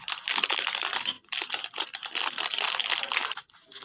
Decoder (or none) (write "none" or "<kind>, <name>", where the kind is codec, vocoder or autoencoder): none